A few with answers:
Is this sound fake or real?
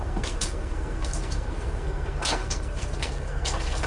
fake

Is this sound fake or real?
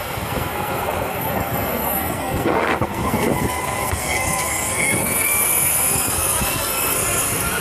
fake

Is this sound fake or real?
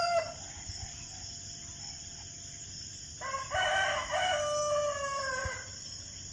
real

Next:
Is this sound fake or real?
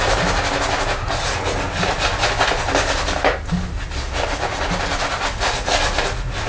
real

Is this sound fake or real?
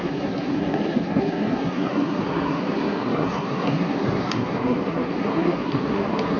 fake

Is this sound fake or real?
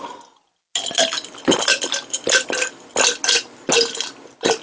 real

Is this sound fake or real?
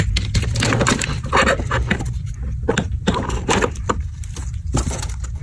real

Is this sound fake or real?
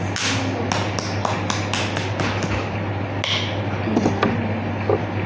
real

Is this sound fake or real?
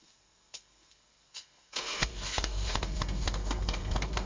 fake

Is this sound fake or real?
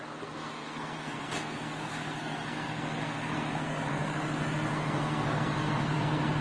fake